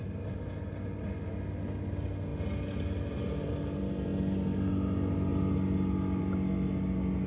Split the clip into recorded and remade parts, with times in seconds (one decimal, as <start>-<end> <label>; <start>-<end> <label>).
0.0-7.3 recorded